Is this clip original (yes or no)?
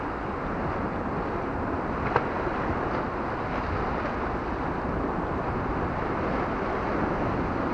yes